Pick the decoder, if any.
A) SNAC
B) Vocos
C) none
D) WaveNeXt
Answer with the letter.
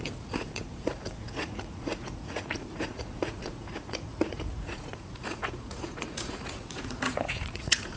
B